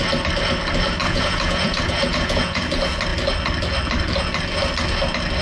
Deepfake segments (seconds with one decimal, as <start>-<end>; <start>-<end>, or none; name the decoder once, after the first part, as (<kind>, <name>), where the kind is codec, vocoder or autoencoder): 1.0-2.6 (vocoder, Vocos)